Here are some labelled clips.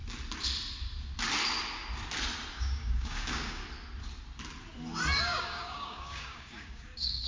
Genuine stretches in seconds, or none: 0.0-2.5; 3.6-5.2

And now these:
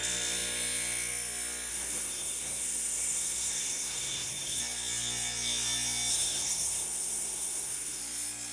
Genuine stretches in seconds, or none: 0.0-1.7; 4.6-6.1; 8.0-8.5

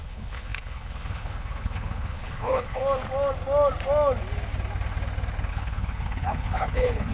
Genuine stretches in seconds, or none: 2.8-5.5